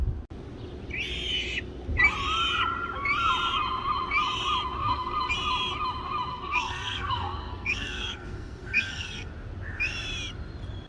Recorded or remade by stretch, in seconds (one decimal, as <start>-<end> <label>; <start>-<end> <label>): 0.0-4.8 recorded; 4.8-5.3 remade; 5.3-6.3 recorded; 6.3-9.3 remade; 9.3-10.9 recorded